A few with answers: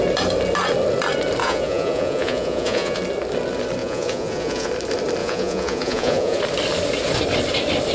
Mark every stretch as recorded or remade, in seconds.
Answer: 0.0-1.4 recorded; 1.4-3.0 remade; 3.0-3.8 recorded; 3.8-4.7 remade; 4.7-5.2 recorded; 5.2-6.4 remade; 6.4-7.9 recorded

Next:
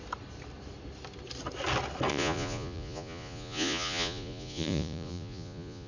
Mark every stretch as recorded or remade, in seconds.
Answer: 0.0-2.1 recorded; 2.1-5.9 remade

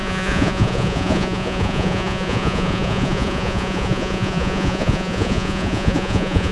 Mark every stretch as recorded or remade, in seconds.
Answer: 0.0-6.5 remade

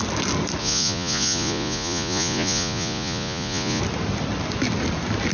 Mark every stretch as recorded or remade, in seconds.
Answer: 0.0-0.6 recorded; 0.6-3.8 remade; 3.8-5.3 recorded

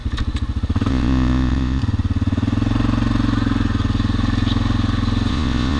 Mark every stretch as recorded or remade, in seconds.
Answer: 0.0-0.9 recorded; 0.9-1.8 remade; 1.8-5.3 recorded; 5.3-5.8 remade

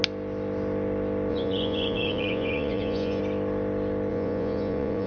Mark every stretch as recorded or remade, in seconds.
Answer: 0.0-1.3 recorded; 1.3-3.2 remade; 3.2-4.1 recorded; 4.1-5.1 remade